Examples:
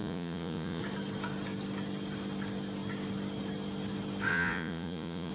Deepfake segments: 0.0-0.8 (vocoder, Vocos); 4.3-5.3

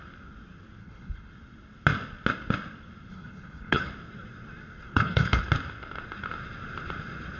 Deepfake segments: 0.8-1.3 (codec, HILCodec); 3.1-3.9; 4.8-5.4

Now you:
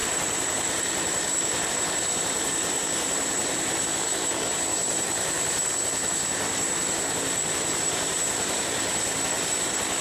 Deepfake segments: 0.0-10.0 (vocoder, BigVGAN v2)

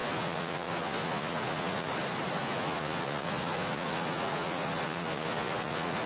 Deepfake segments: 0.0-1.9 (vocoder, Vocos); 2.4-6.1